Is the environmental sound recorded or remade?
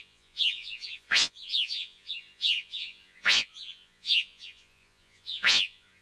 remade